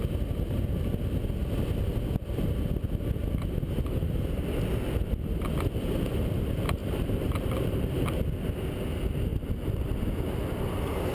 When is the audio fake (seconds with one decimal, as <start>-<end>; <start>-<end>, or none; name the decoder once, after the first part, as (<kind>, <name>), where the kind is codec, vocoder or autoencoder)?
6.8-8.2 (vocoder, BigVGAN v2)